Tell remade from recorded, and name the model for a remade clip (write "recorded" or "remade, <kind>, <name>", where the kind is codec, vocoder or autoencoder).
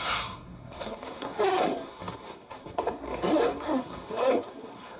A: remade, codec, SNAC